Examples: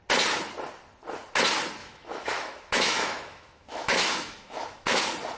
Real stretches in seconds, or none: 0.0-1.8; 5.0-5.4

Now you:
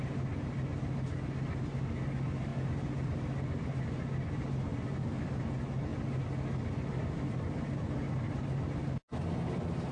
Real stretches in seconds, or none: 0.0-4.7; 5.4-5.9; 9.1-9.9